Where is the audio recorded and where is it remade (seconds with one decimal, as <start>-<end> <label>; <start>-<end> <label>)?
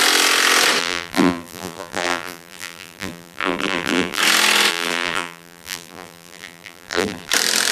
0.0-0.8 recorded; 0.8-4.2 remade; 4.2-4.7 recorded; 4.7-7.3 remade; 7.3-7.7 recorded